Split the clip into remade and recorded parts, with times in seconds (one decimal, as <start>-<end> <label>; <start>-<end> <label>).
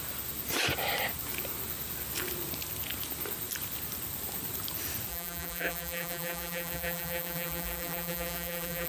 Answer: 0.0-5.1 recorded; 5.1-8.9 remade